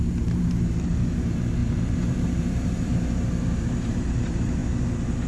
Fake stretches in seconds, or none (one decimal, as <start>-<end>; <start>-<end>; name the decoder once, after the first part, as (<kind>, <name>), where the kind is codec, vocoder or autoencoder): 0.0-4.6 (vocoder, BigVGAN v2)